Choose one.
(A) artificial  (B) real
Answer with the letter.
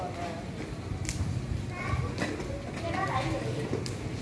B